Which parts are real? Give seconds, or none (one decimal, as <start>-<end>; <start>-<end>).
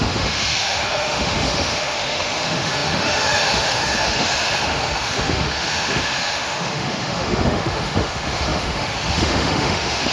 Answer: none